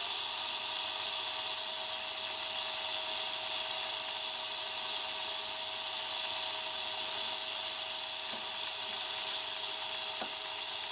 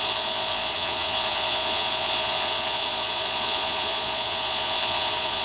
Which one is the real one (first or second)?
first